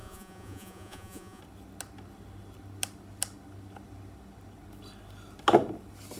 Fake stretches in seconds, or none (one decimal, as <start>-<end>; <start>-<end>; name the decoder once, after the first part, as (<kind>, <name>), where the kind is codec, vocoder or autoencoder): 0.0-1.4 (vocoder, Vocos)